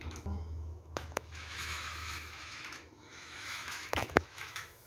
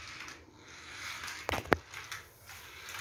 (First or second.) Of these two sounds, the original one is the second